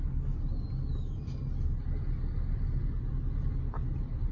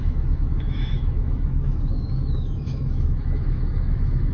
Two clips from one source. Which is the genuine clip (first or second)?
first